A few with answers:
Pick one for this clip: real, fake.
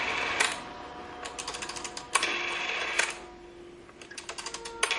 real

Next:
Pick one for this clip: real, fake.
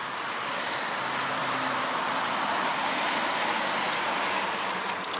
real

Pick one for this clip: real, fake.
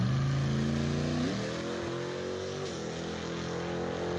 real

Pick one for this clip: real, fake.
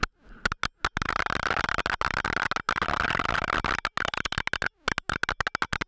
real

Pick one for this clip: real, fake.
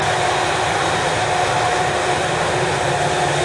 real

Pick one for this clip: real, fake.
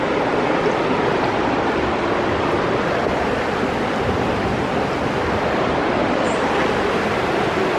real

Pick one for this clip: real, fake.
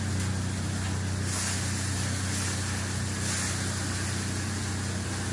real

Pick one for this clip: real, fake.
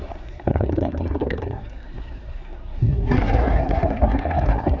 fake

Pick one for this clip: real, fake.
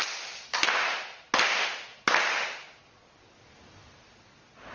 real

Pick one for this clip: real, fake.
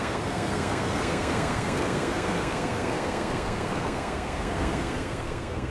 fake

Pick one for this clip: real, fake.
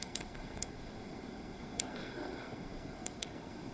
fake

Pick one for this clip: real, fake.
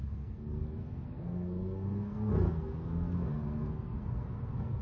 fake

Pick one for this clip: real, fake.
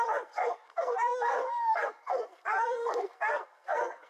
fake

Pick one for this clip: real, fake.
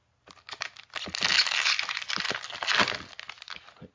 real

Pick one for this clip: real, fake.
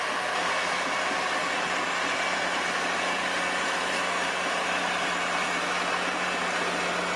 real